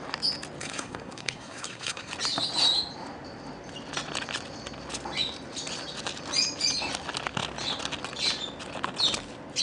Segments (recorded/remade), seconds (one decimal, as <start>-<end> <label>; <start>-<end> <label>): 0.0-0.6 recorded; 0.6-2.1 remade; 2.1-9.6 recorded